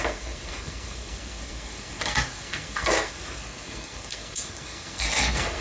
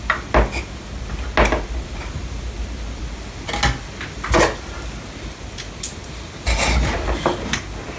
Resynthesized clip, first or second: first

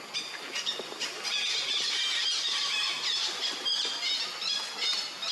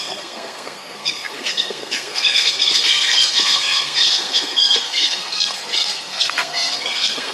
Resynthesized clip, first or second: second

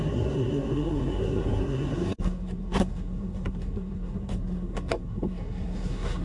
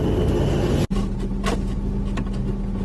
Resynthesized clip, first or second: first